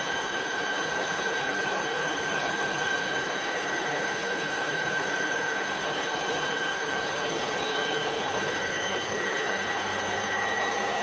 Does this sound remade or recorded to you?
remade